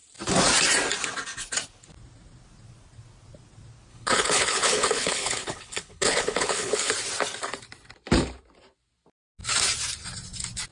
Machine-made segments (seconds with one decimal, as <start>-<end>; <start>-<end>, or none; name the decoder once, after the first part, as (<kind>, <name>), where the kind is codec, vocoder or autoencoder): 3.9-6.9 (codec, HILCodec)